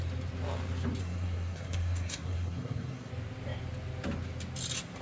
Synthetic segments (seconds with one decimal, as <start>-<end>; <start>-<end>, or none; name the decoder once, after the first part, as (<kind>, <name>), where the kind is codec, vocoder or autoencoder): 1.0-3.1 (codec, SNAC)